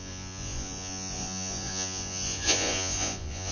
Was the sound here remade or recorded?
remade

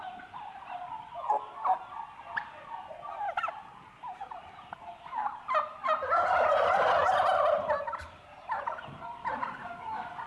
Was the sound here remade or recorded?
recorded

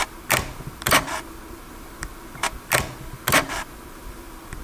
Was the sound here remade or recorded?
recorded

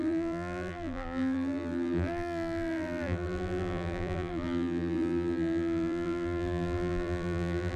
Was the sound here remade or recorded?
remade